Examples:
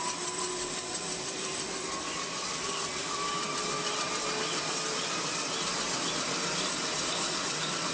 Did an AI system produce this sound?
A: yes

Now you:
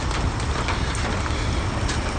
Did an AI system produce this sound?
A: no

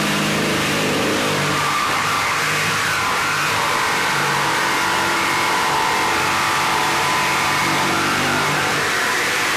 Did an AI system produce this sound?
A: yes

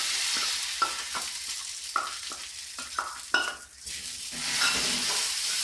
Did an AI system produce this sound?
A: no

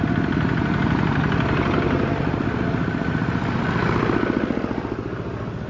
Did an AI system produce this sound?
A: no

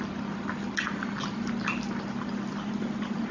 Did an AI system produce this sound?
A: no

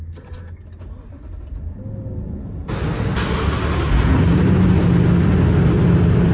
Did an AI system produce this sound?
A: no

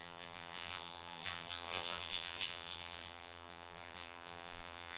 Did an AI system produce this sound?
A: yes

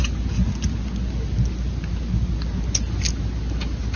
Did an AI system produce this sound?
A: no